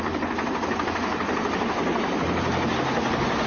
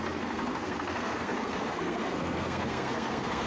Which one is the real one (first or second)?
first